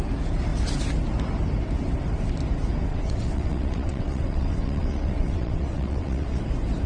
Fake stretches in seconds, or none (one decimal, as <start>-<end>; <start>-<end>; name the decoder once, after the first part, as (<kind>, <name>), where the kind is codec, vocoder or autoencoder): 2.9-6.4 (vocoder, WaveNeXt)